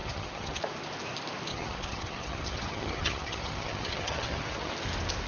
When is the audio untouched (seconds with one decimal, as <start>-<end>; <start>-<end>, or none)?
0.6-1.5; 4.7-5.3